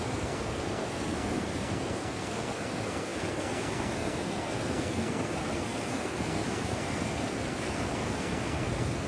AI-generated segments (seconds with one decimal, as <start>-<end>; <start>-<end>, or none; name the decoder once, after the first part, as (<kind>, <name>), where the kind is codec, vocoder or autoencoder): 0.0-9.1 (codec, SNAC)